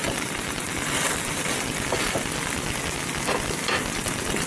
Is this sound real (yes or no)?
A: yes